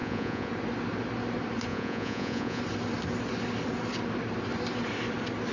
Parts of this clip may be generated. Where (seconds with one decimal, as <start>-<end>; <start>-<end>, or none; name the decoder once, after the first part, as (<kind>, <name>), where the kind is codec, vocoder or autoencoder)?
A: 0.0-0.5 (vocoder, Vocos); 1.7-2.6